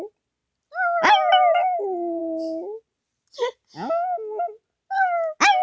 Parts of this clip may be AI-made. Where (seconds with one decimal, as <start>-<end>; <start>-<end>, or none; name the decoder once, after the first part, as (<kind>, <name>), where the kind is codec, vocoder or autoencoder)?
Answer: none